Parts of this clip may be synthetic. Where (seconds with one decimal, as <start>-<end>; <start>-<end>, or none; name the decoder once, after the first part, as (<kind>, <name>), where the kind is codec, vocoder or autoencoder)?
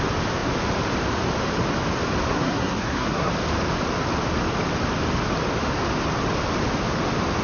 2.3-3.3 (codec, SNAC)